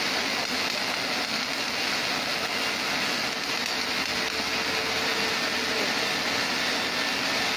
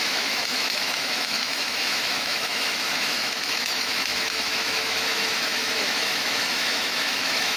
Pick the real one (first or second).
first